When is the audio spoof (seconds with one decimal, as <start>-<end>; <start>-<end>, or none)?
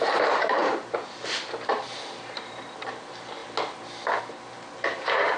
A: 0.0-3.4; 4.2-5.4